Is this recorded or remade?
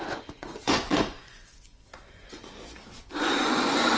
remade